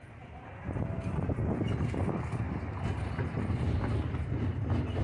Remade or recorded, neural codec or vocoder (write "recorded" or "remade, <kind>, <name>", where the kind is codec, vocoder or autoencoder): recorded